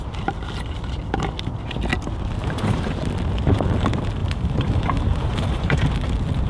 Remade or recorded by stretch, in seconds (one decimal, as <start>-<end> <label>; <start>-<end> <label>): 0.0-2.4 recorded; 2.4-2.9 remade; 2.9-4.2 recorded; 4.2-5.8 remade; 5.8-6.5 recorded